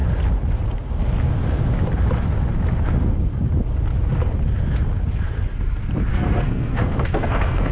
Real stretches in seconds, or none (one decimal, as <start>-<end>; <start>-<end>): 0.0-6.1